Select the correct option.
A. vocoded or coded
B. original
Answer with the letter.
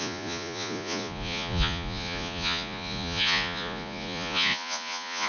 A